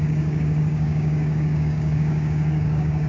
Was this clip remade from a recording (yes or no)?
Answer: yes